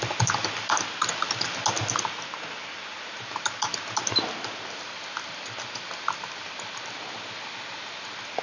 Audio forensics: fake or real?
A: real